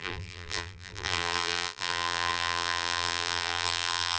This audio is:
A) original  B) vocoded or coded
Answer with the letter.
B